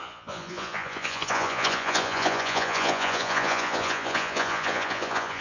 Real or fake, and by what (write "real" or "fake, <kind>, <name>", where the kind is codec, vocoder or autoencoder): fake, vocoder, Vocos